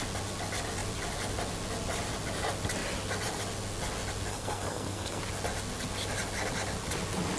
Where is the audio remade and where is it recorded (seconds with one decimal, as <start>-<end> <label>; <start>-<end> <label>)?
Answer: 0.0-4.3 recorded; 4.3-5.2 remade; 5.2-7.4 recorded